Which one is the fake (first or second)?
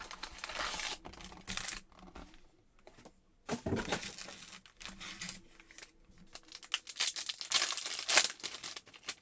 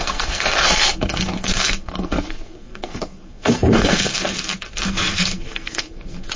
second